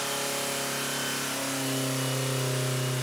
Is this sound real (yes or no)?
yes